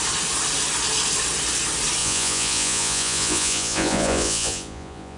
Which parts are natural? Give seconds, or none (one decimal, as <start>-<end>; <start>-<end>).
0.0-2.0